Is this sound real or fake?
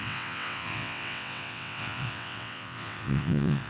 fake